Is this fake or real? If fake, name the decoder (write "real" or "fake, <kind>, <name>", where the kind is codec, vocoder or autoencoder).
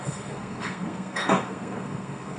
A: fake, codec, SNAC